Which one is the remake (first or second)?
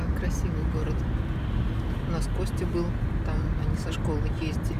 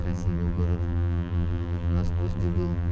second